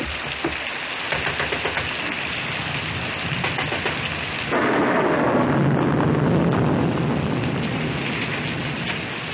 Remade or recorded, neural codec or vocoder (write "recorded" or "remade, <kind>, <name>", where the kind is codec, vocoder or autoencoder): recorded